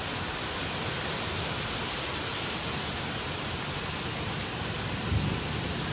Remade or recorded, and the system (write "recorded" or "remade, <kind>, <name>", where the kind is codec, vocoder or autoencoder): recorded